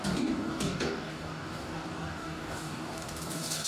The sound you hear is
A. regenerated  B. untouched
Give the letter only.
A